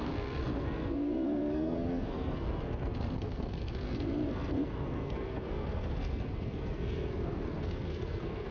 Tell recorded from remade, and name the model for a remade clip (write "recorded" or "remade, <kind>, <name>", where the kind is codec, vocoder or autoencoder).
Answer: remade, codec, SNAC